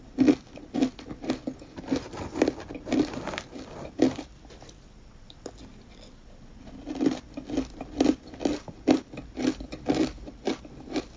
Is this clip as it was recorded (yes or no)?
yes